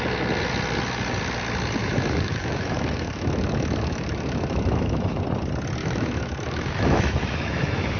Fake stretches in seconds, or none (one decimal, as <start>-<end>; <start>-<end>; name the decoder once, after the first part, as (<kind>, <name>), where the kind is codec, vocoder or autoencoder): 1.8-5.2 (autoencoder, DAC-VAE); 5.8-8.0